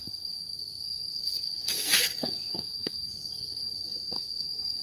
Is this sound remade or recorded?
remade